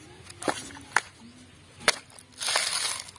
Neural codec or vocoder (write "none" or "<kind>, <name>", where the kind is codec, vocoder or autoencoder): none